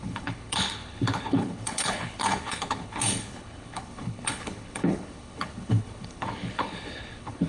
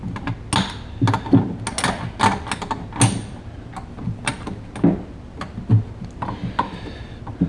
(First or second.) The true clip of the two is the second